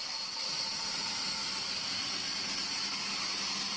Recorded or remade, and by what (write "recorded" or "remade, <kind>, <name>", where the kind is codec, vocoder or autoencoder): recorded